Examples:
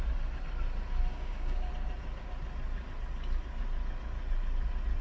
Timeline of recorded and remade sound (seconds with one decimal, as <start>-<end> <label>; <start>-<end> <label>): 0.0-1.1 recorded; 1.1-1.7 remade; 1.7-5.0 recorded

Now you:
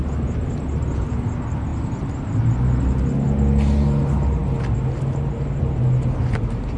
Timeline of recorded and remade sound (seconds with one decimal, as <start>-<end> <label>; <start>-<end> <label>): 0.0-6.8 recorded

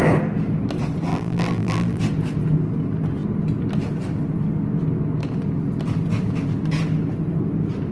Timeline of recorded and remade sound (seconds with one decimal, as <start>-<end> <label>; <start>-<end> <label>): 0.0-1.1 recorded; 1.1-2.0 remade; 2.0-7.9 recorded

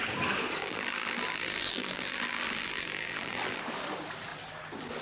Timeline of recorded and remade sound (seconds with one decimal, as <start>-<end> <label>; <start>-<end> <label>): 0.0-0.6 recorded; 0.6-3.6 remade; 3.6-5.0 recorded

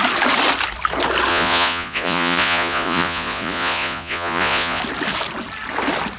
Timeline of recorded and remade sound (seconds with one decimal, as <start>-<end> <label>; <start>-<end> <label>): 0.0-1.3 recorded; 1.3-4.8 remade; 4.8-6.2 recorded

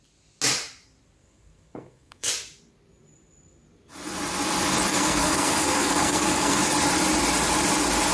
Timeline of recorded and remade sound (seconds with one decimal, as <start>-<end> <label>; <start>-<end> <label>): 0.0-1.2 recorded; 1.2-2.3 remade; 2.3-4.9 recorded; 4.9-6.6 remade; 6.6-8.1 recorded

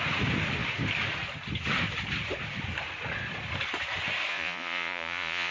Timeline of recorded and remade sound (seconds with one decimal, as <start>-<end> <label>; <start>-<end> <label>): 0.0-4.3 recorded; 4.3-5.5 remade